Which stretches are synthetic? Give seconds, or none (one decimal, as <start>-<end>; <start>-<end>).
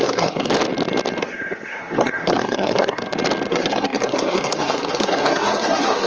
0.0-0.5; 1.2-3.0; 3.5-6.1